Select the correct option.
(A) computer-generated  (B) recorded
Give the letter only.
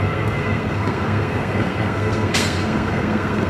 A